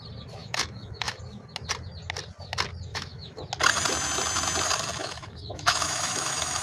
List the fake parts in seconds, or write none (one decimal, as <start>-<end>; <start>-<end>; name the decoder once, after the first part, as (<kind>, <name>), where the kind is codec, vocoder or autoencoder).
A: 0.4-1.2 (autoencoder, DAC-VAE); 2.9-3.4; 5.0-6.6